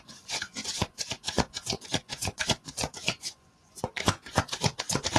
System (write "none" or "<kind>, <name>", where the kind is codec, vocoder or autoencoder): vocoder, Vocos